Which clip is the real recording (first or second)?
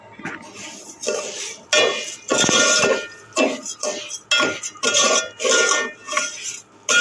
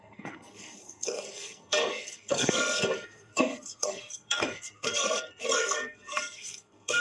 first